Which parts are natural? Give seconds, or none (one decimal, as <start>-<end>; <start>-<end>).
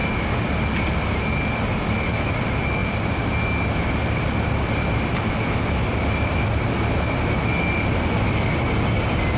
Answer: 0.0-9.4